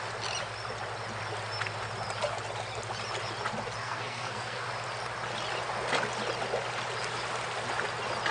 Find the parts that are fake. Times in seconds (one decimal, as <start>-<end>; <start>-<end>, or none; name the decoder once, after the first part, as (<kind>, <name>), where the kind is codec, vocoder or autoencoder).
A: 3.8-4.7 (codec, SNAC)